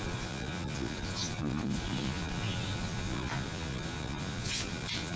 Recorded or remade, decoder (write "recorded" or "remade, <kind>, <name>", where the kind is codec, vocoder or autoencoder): remade, vocoder, Vocos